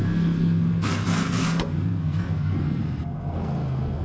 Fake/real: fake